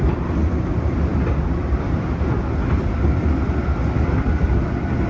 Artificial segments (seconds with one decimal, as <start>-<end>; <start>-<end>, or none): none